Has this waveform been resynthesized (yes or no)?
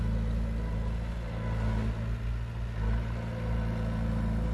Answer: no